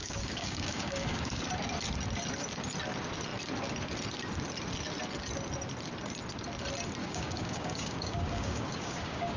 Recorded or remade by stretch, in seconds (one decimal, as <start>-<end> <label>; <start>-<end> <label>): 0.0-1.4 remade; 1.4-7.0 recorded; 7.0-9.4 remade